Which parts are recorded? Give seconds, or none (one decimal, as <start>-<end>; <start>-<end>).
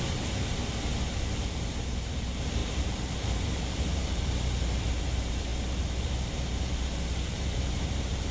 0.6-1.6; 5.5-6.1; 6.5-7.3